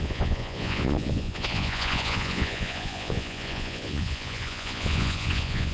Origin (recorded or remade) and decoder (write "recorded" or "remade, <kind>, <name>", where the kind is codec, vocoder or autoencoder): remade, vocoder, Vocos